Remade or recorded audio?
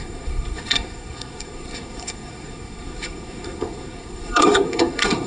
remade